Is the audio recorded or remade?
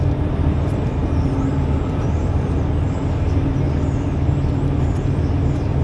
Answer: recorded